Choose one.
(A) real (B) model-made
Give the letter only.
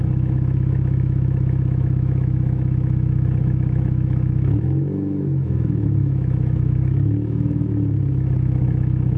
B